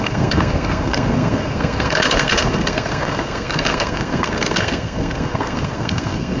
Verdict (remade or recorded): remade